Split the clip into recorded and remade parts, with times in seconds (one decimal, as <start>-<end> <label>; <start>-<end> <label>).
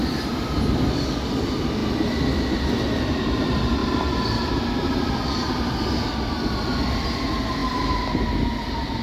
0.0-3.8 recorded; 3.8-5.1 remade; 5.1-9.0 recorded